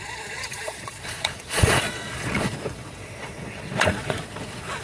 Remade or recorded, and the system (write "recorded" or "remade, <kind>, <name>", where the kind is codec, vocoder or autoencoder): remade, vocoder, Vocos